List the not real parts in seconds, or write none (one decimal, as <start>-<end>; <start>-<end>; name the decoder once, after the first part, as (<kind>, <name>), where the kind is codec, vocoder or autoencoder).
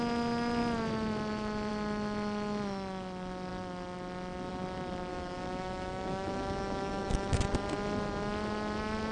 5.1-7.5 (autoencoder, DAC-VAE)